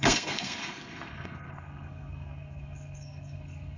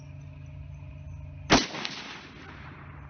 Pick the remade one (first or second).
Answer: first